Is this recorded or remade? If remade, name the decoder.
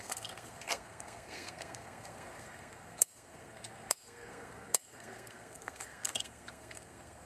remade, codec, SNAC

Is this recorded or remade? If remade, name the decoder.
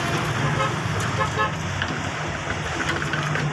recorded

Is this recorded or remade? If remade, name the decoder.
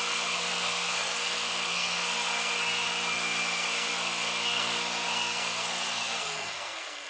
remade, codec, SNAC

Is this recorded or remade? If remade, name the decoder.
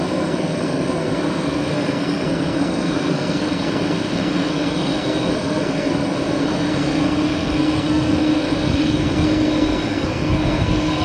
remade, codec, SNAC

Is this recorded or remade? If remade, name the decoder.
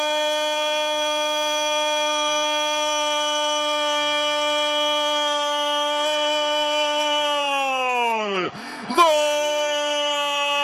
remade, codec, SNAC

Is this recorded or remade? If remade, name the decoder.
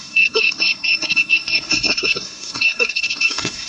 remade, codec, SNAC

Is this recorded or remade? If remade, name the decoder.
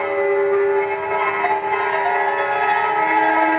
recorded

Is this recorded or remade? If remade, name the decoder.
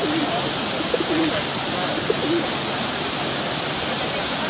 recorded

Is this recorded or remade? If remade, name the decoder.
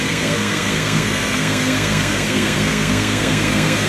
remade, codec, SNAC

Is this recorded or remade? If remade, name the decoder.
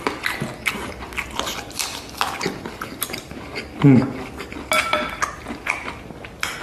recorded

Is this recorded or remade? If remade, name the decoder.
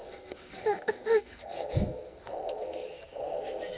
remade, codec, SNAC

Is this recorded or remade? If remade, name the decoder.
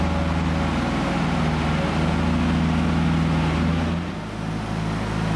recorded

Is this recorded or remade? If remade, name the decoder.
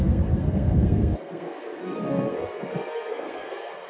remade, codec, SNAC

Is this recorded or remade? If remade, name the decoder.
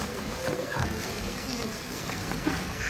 remade, codec, SNAC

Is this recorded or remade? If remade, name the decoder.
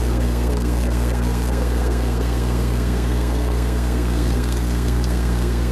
remade, codec, SNAC